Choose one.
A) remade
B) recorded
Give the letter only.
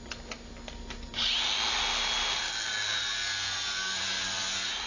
B